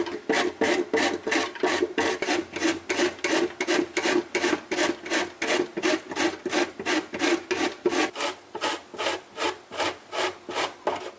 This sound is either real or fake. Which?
real